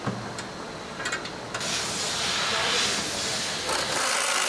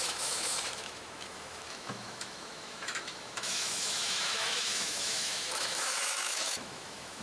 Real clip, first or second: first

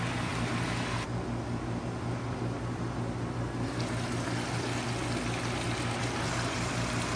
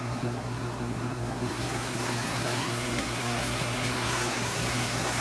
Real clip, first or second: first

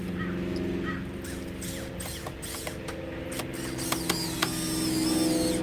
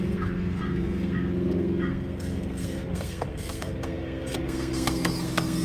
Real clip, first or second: first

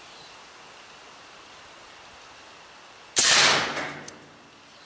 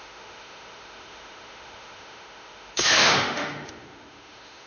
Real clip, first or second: first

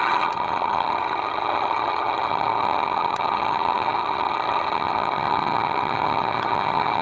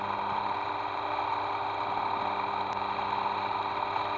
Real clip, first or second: second